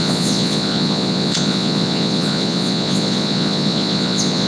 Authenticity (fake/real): fake